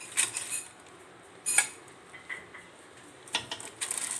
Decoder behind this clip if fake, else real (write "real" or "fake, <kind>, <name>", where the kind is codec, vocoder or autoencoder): real